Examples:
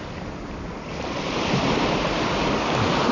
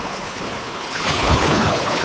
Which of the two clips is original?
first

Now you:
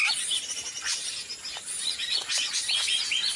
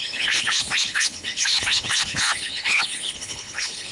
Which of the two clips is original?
first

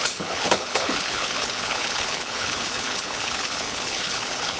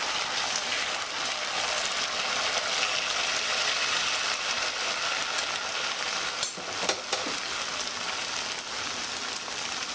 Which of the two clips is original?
second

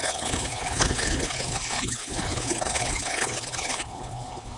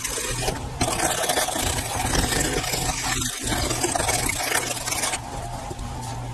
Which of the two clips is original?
second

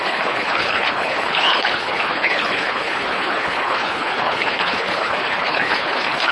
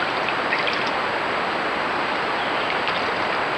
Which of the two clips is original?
second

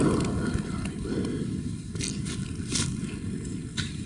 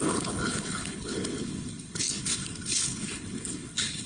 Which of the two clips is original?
first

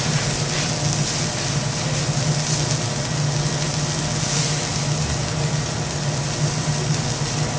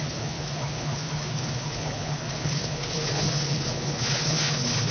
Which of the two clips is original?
first